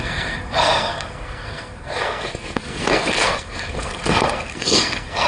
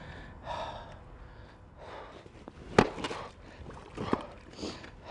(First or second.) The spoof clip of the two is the first